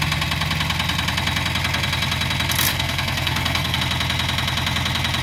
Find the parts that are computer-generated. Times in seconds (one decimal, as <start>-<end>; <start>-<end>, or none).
2.7-3.8